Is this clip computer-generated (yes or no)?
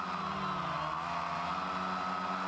no